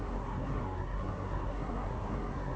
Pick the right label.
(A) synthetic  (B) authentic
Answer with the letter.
A